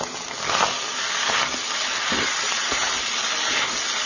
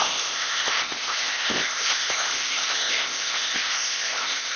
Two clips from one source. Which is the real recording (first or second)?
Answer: first